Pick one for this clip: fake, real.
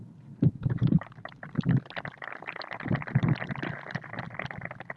real